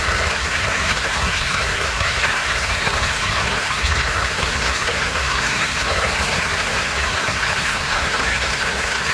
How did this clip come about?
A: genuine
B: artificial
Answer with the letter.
B